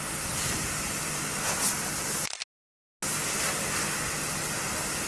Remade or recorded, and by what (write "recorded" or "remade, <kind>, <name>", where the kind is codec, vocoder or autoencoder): recorded